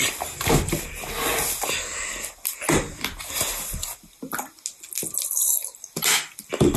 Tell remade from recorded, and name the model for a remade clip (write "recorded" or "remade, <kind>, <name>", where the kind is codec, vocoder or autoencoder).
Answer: recorded